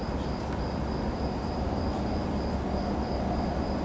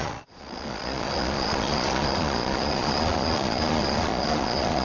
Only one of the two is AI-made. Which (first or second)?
second